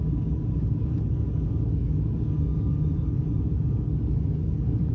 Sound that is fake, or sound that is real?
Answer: fake